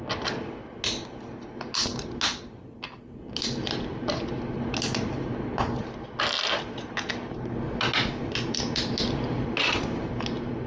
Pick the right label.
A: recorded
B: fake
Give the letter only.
A